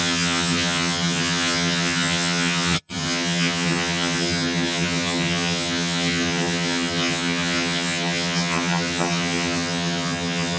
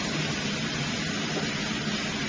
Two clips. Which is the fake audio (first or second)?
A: first